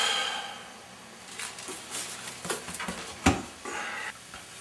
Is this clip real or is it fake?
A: real